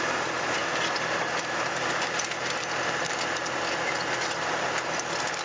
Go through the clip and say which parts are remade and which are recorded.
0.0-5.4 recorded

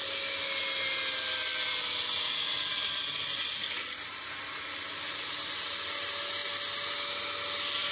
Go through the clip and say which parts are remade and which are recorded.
0.0-1.5 recorded; 1.5-4.3 remade; 4.3-7.9 recorded